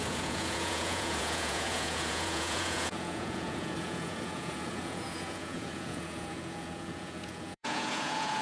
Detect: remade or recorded remade